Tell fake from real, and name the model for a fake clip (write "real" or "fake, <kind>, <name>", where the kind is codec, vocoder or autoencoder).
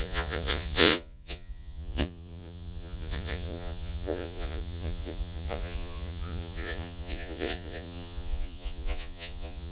fake, vocoder, Vocos